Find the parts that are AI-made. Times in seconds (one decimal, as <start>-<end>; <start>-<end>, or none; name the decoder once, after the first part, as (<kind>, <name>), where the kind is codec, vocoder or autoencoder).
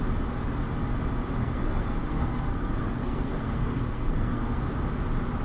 1.4-4.6 (codec, SNAC)